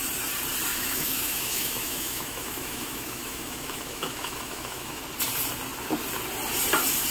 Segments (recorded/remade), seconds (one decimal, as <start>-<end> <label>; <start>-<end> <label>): 0.0-0.7 recorded; 0.7-5.0 remade; 5.0-7.1 recorded